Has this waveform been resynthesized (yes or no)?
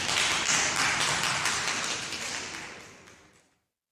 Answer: no